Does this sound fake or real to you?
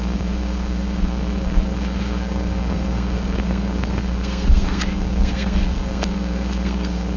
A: fake